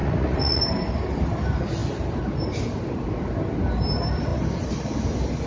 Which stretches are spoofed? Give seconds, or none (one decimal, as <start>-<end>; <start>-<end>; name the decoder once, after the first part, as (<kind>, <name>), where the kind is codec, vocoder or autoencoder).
0.0-0.6 (vocoder, Vocos)